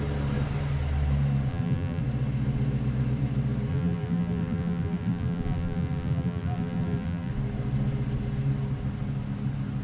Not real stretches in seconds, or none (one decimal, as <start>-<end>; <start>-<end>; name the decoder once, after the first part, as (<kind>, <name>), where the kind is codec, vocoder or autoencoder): 1.5-2.0 (vocoder, BigVGAN v2); 3.7-7.3